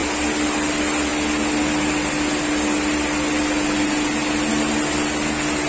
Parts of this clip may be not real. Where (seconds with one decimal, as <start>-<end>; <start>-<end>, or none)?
none